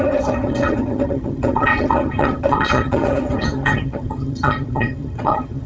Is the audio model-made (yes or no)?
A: yes